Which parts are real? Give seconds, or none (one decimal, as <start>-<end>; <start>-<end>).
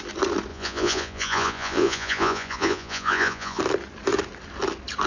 0.0-0.5; 3.6-5.1